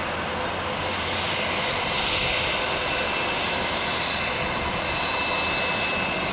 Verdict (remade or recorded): recorded